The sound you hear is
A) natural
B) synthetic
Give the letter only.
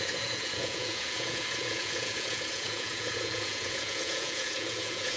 B